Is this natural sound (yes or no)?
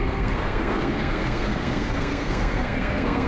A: no